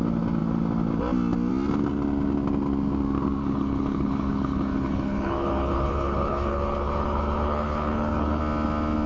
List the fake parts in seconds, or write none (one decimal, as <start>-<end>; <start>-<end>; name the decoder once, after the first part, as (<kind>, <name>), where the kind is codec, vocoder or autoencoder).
3.4-8.4 (codec, HILCodec)